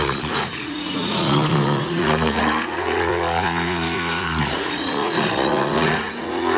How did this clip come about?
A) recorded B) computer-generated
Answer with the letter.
B